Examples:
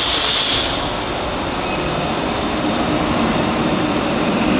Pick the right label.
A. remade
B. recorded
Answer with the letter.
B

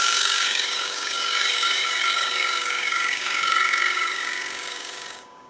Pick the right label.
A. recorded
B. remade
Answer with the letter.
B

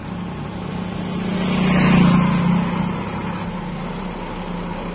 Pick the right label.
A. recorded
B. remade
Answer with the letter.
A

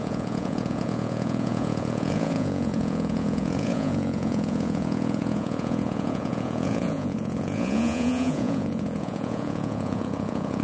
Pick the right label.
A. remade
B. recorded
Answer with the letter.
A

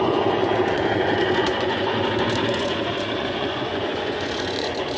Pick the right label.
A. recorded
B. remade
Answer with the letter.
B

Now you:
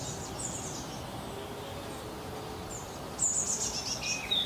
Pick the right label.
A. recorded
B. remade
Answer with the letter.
A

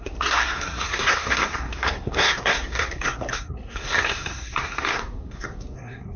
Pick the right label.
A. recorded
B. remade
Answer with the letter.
B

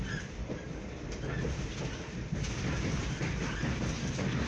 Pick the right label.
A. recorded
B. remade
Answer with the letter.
A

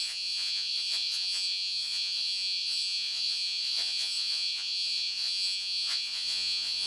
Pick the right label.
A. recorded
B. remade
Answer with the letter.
B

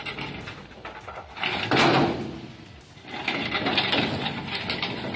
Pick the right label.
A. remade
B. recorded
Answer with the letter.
B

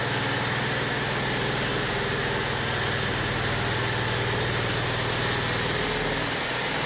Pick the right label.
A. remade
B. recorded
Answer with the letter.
B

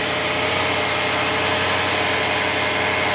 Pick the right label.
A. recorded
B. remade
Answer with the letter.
A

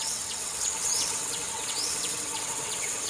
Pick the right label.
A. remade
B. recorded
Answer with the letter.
A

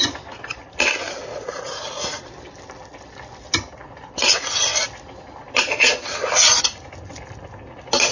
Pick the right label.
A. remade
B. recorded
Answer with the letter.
A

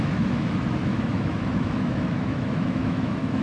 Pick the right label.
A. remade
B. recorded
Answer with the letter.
A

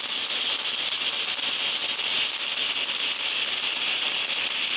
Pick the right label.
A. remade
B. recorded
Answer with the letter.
B